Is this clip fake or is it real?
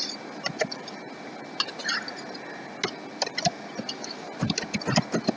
real